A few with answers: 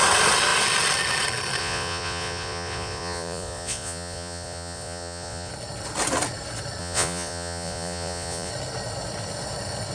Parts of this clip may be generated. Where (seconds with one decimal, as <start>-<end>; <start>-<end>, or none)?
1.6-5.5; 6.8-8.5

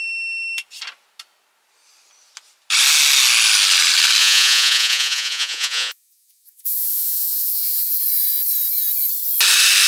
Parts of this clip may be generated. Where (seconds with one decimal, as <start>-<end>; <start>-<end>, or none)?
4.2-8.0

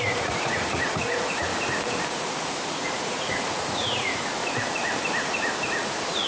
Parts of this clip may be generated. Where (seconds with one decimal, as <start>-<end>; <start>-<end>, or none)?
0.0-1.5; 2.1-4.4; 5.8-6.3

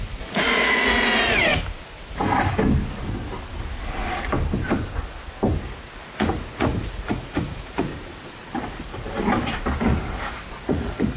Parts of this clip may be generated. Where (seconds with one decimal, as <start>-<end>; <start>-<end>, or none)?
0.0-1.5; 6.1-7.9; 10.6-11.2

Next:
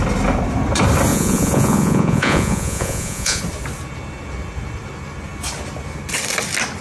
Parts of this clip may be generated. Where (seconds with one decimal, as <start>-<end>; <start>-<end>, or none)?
1.1-3.4

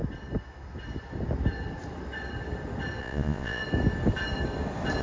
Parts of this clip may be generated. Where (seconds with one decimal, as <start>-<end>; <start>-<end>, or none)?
3.0-3.6

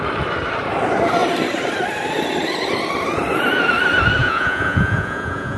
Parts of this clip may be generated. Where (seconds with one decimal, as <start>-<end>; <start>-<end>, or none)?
4.2-5.6